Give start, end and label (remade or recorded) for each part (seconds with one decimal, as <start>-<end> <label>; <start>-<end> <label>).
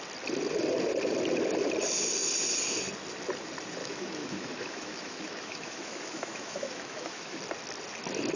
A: 0.0-3.8 recorded; 3.8-7.4 remade; 7.4-8.4 recorded